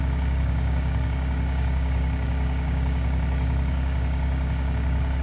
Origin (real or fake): fake